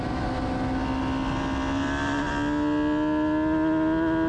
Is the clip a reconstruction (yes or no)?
no